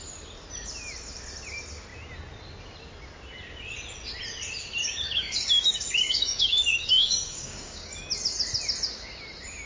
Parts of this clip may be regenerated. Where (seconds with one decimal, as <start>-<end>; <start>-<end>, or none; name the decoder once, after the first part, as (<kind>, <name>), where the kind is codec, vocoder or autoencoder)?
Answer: 4.8-7.9 (codec, DAC)